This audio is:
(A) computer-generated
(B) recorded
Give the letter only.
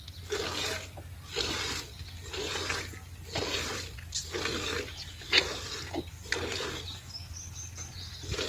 B